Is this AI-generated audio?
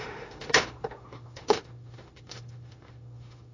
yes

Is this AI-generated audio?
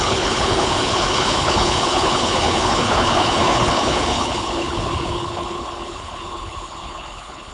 yes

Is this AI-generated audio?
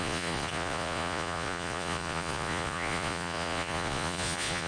yes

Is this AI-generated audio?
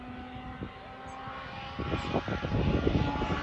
no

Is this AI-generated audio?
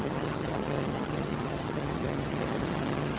yes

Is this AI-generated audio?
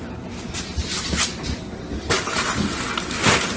yes